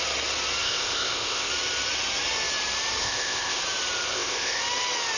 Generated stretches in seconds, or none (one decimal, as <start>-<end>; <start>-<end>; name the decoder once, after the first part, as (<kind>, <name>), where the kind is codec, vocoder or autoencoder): 0.6-1.5 (codec, ZipCodec); 3.0-3.6; 4.1-4.6